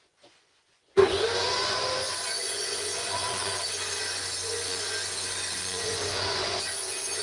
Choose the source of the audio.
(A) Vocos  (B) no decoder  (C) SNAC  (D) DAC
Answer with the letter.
A